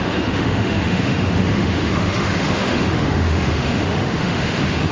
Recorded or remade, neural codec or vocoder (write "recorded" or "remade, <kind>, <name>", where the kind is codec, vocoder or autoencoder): remade, autoencoder, DAC-VAE